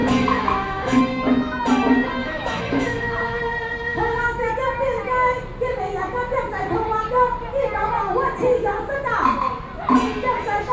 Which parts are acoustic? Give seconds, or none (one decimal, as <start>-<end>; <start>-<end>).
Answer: 1.0-2.2; 3.4-3.9; 4.5-10.7